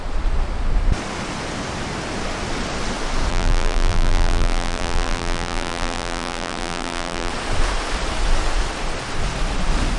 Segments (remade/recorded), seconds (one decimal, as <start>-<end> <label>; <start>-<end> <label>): 0.0-3.3 recorded; 3.3-7.3 remade; 7.3-10.0 recorded